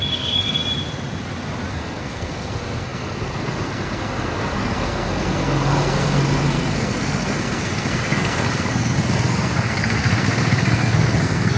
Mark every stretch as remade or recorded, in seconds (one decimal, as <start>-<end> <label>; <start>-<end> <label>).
0.0-0.6 remade; 0.6-1.7 recorded; 1.7-11.6 remade